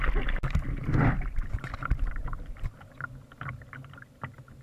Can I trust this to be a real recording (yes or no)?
yes